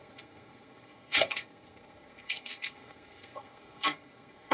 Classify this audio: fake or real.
fake